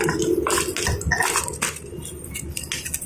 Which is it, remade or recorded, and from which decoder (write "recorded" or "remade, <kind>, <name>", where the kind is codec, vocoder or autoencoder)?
recorded